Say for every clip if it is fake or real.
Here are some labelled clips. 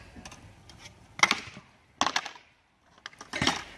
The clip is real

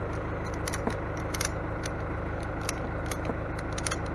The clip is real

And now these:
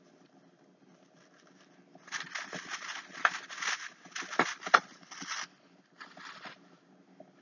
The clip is real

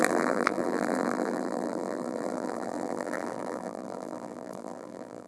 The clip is fake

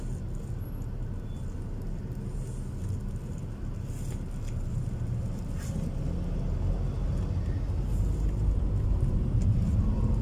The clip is real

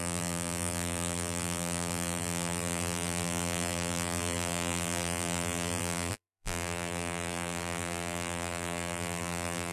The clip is fake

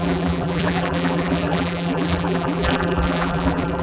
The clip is fake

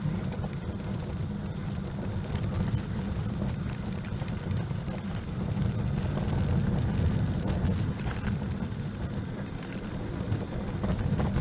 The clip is fake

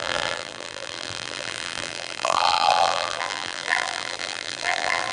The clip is fake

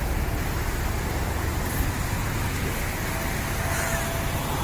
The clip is real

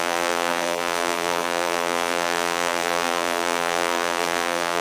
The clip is fake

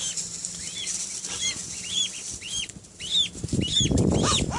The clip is real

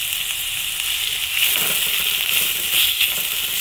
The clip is real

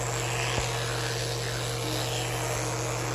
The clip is real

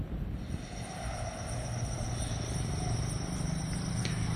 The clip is real